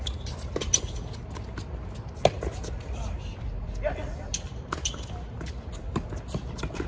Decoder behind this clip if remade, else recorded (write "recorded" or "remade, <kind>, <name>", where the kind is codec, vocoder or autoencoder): recorded